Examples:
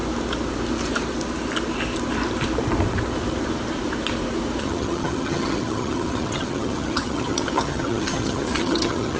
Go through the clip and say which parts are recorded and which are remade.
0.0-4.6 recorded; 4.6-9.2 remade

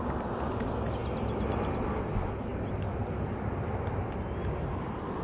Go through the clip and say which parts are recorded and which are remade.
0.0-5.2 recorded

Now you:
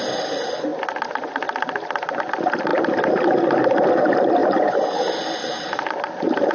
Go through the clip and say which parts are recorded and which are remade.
0.0-6.5 recorded

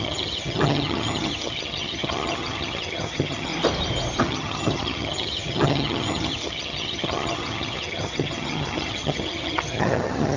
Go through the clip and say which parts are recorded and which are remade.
0.0-3.5 remade; 3.5-4.2 recorded; 4.2-10.4 remade